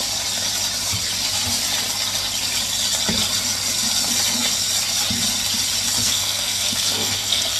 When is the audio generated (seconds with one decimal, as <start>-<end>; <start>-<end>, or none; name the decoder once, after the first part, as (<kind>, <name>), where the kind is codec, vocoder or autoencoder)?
6.0-7.6 (codec, SNAC)